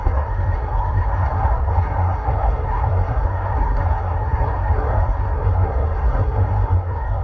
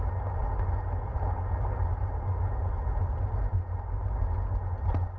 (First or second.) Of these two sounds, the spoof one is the first